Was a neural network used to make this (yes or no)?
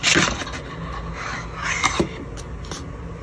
no